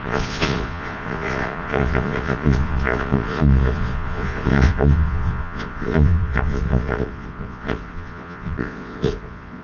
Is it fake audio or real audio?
fake